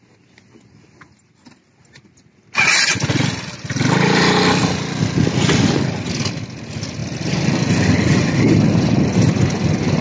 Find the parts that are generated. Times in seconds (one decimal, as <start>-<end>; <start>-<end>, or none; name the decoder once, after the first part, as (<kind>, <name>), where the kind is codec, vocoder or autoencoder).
none

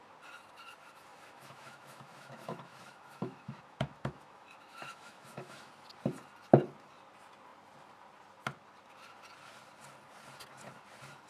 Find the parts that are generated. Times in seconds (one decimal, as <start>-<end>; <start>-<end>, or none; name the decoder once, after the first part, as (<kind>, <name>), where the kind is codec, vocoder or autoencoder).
1.1-5.7 (autoencoder, DAC-VAE)

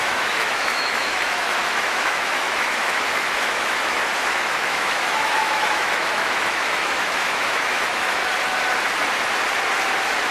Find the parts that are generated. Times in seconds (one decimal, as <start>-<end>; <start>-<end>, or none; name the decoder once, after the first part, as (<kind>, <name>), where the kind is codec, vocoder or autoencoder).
0.0-8.2 (autoencoder, DAC-VAE)

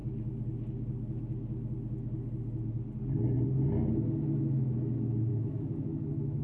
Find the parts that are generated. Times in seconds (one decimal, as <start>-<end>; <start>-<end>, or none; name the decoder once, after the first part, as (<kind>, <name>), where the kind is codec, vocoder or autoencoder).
5.3-6.4 (autoencoder, DAC-VAE)

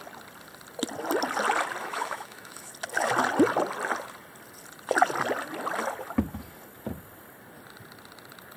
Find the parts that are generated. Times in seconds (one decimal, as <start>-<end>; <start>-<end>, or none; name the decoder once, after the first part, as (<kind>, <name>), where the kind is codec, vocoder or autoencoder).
1.8-2.7 (autoencoder, DAC-VAE)

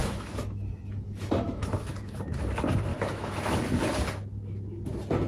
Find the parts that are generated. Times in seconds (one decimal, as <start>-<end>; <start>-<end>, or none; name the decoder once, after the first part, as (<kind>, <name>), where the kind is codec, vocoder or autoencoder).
0.0-2.4 (autoencoder, DAC-VAE); 2.9-3.6

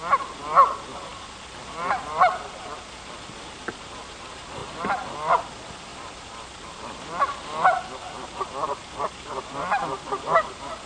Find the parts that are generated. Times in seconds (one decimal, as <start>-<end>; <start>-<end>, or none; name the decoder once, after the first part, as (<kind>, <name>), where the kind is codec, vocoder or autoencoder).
none